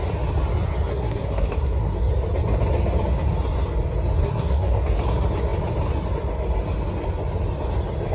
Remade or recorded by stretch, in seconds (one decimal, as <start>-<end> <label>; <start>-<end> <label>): 0.0-0.9 recorded; 0.9-2.1 remade; 2.1-4.2 recorded; 4.2-5.0 remade; 5.0-8.1 recorded